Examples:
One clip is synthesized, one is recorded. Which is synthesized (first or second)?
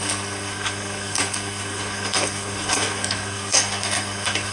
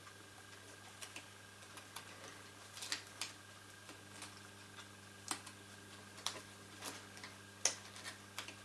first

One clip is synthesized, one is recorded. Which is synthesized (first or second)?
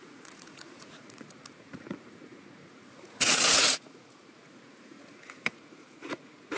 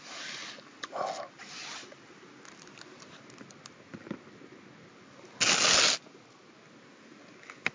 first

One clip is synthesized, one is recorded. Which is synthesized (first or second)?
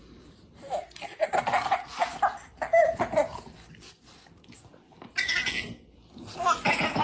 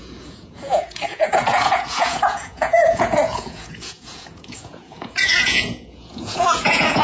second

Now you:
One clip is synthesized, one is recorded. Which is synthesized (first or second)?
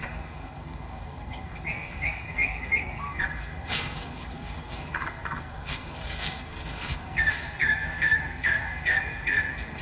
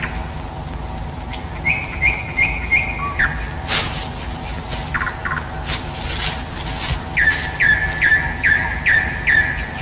first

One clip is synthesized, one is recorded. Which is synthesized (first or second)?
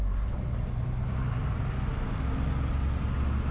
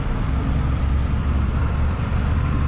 second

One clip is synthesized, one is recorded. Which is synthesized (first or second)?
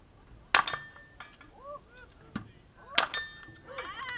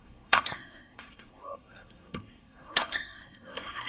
second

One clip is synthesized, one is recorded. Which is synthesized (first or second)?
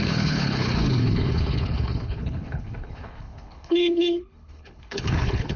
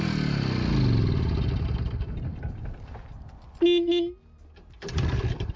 first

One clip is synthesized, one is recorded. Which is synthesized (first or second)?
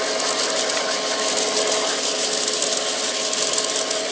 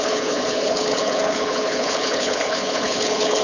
second